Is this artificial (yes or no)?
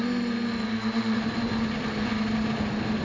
no